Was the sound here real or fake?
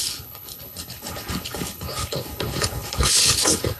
fake